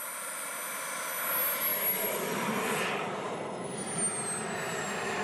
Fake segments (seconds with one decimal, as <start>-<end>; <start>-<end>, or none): none